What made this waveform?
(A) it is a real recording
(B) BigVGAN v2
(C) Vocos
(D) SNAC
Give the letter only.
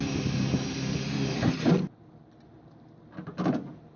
A